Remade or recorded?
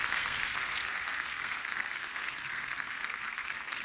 remade